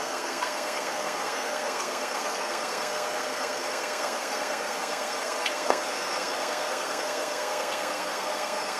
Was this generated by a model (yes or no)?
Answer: yes